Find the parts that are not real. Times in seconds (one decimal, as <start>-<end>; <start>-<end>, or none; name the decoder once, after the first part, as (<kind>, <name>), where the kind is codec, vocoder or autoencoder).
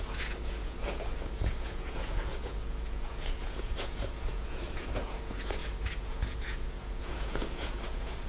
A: 0.0-8.3 (vocoder, Vocos)